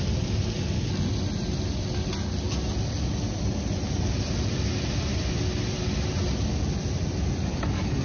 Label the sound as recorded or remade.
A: recorded